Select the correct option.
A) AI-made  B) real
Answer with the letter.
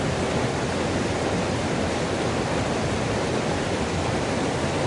B